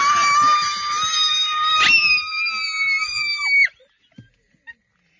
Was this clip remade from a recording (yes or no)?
no